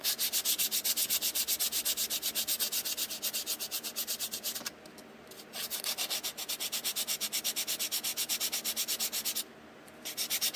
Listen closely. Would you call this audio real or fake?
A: real